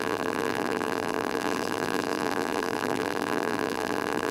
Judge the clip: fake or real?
fake